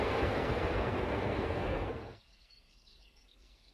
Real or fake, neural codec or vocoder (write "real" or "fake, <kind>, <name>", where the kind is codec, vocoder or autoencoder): fake, codec, SNAC